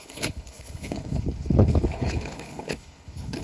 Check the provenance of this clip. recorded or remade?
remade